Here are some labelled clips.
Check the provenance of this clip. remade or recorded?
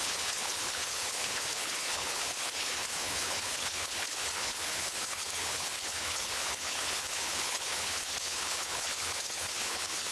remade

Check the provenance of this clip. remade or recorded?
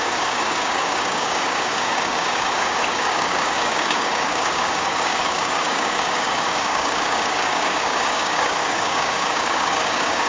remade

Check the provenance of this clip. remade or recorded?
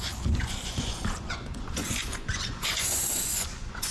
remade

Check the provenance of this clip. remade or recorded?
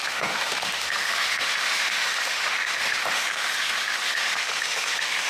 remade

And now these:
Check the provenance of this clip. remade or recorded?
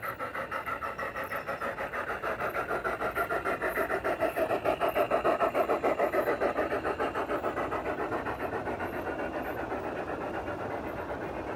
recorded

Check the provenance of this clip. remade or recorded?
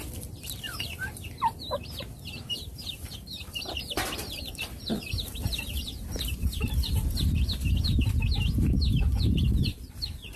remade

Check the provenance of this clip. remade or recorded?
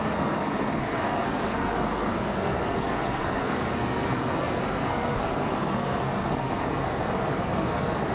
remade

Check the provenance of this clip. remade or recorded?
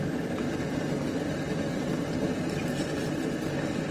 recorded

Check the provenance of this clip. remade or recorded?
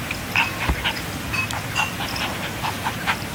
recorded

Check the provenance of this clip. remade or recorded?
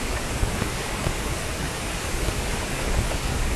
remade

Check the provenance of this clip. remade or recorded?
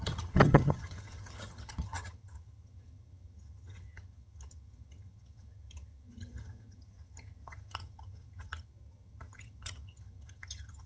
remade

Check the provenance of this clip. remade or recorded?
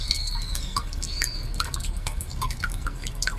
remade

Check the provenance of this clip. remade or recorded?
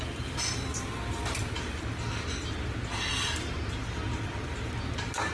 recorded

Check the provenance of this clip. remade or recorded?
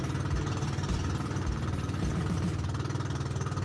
recorded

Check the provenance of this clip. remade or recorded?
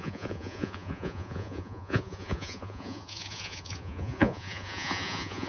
remade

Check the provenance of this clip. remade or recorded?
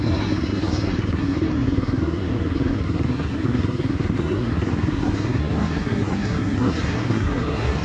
remade